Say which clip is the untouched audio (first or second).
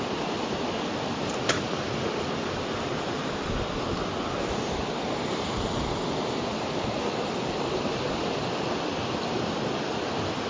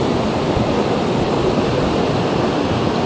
second